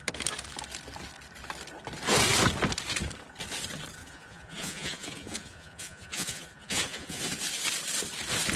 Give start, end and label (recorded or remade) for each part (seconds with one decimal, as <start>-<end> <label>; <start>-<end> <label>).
0.0-4.0 recorded; 4.0-7.2 remade; 7.2-8.6 recorded